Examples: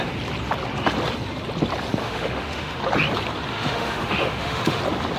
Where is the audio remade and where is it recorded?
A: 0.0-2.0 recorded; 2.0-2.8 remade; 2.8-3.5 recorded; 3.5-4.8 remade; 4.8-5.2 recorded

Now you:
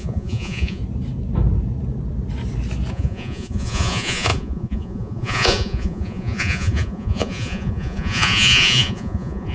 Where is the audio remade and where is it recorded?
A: 0.0-0.8 remade; 0.8-2.9 recorded; 2.9-9.5 remade